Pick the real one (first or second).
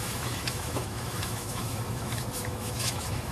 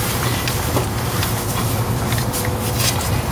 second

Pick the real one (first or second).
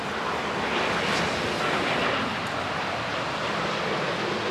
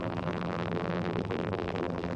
first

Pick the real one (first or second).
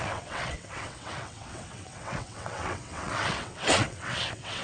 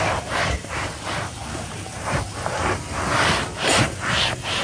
second